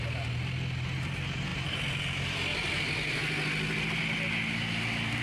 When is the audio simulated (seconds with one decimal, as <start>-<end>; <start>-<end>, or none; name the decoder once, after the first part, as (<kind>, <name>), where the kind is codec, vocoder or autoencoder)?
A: none